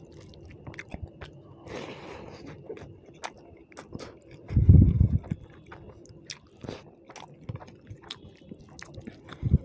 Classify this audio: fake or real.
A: real